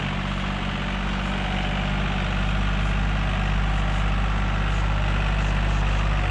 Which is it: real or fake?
real